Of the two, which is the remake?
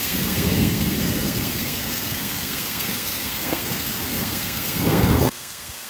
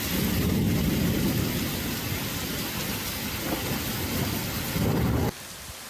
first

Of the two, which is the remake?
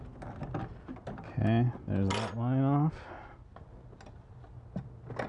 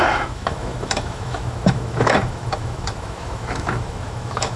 second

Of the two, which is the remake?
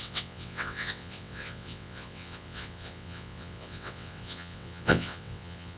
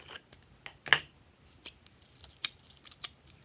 first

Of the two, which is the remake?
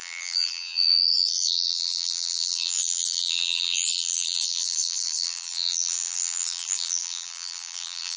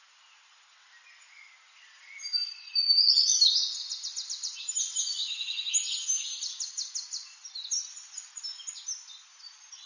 first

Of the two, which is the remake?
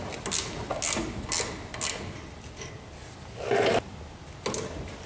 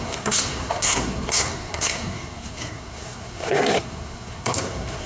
second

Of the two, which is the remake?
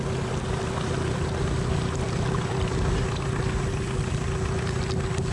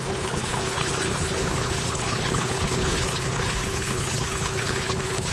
second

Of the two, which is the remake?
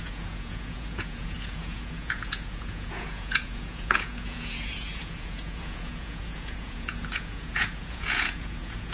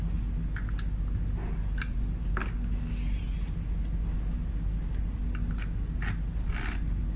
first